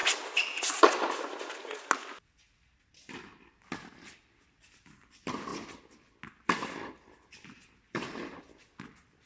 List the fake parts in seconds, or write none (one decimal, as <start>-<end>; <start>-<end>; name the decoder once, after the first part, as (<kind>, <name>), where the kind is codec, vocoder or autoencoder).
none